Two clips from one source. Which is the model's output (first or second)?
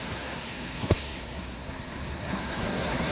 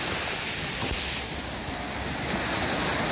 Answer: first